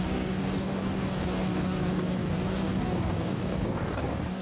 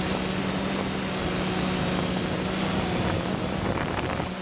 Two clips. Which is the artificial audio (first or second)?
first